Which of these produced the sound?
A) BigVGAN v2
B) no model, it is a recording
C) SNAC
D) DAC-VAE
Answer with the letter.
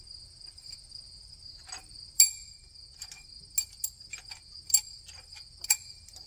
B